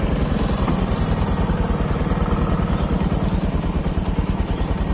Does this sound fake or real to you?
real